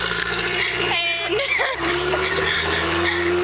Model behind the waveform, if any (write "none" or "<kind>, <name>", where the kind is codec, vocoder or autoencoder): vocoder, BigVGAN v2